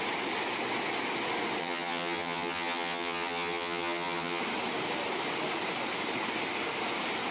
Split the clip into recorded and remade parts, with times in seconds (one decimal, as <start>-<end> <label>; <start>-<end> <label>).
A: 0.0-1.6 recorded; 1.6-4.4 remade; 4.4-7.3 recorded